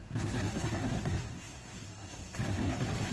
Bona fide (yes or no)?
no